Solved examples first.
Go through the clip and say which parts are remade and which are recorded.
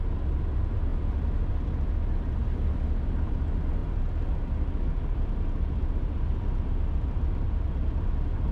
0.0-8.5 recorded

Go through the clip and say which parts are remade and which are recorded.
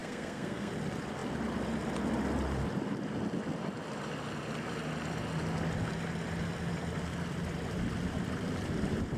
0.0-0.7 remade; 0.7-9.2 recorded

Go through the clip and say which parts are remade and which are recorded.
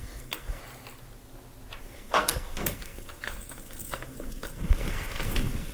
0.0-0.6 remade; 0.6-1.8 recorded; 1.8-5.7 remade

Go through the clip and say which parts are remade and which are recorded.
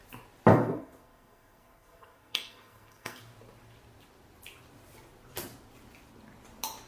0.0-0.5 recorded; 0.5-3.2 remade; 3.2-6.9 recorded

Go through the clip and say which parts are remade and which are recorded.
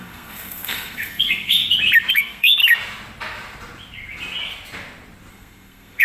0.0-1.6 remade; 1.6-2.1 recorded; 2.1-2.6 remade; 2.6-5.3 recorded; 5.3-6.0 remade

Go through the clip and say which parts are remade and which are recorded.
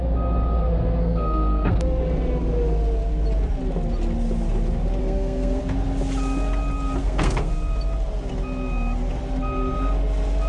0.0-1.0 recorded; 1.0-2.0 remade; 2.0-5.0 recorded; 5.0-5.6 remade; 5.6-7.0 recorded; 7.0-7.5 remade; 7.5-10.5 recorded